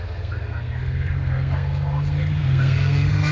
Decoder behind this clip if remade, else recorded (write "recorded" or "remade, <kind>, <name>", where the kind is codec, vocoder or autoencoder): remade, codec, SNAC